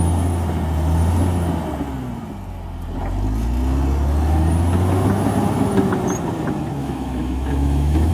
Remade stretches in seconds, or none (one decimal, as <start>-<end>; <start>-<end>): 6.8-8.1